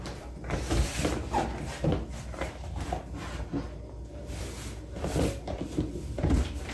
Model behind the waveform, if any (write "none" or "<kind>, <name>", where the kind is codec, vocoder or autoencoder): none